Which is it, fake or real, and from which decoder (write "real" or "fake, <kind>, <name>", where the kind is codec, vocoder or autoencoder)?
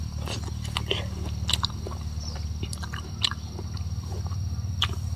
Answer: real